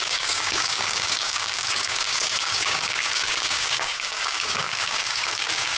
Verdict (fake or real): fake